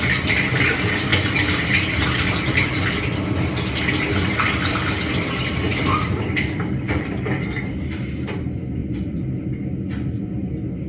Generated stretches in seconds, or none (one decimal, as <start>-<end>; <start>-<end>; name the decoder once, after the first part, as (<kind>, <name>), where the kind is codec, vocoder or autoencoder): 5.7-7.6 (vocoder, BigVGAN v2); 8.8-9.4